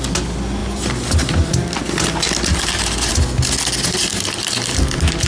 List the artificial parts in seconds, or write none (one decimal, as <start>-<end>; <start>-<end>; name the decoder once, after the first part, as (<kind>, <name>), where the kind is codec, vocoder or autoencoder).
0.6-1.5 (vocoder, BigVGAN v2); 2.5-3.1; 4.0-4.6

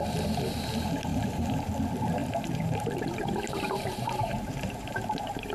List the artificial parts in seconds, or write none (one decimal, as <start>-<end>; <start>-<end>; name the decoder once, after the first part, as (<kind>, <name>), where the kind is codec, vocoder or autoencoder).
1.1-1.7 (vocoder, BigVGAN v2); 2.2-5.5

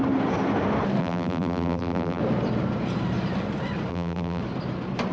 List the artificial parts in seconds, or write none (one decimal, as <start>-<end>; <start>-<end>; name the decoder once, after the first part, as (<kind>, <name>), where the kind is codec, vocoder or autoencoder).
1.0-2.2 (vocoder, BigVGAN v2); 3.9-4.4

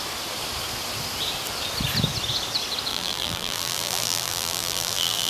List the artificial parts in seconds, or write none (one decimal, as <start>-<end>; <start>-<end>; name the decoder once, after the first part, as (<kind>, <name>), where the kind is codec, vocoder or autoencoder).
2.9-5.3 (vocoder, BigVGAN v2)

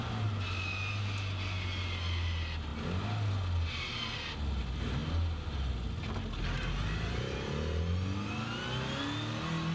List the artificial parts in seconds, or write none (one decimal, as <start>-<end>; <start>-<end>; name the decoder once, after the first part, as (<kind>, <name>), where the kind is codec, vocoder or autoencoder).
none